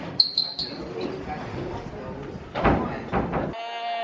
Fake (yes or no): no